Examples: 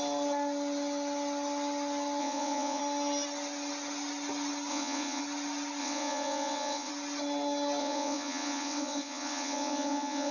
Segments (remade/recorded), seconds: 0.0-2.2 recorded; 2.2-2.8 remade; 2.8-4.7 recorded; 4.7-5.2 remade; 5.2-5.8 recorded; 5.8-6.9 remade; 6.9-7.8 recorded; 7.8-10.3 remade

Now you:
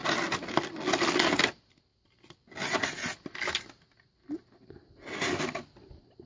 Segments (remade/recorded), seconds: 0.0-6.3 recorded

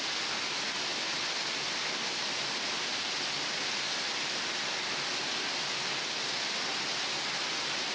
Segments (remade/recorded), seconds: 0.0-7.9 recorded